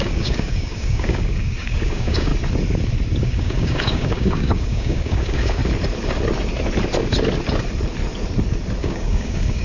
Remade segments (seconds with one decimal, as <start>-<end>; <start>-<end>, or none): 0.0-2.3; 3.2-5.6; 8.8-9.6